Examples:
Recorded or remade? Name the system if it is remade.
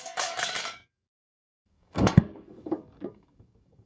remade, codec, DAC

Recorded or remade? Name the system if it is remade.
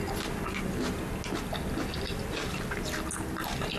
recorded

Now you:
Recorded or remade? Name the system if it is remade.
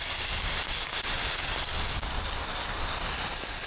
recorded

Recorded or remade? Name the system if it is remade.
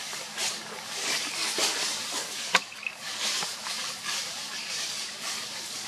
remade, codec, DAC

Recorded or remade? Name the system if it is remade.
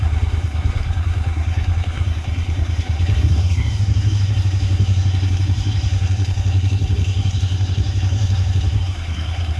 remade, codec, SNAC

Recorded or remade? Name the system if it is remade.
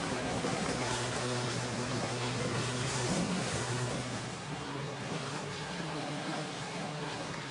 remade, codec, SNAC